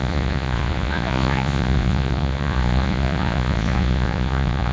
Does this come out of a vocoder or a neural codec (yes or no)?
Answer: yes